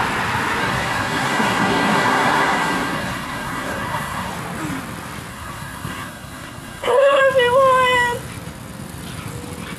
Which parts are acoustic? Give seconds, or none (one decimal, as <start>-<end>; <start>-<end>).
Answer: 0.0-0.6; 4.3-5.3; 7.2-9.8

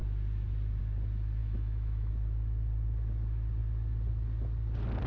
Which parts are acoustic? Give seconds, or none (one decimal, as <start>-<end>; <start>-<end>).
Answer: 0.0-1.4; 2.1-5.1